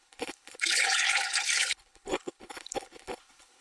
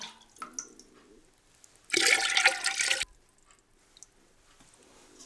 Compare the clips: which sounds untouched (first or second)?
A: second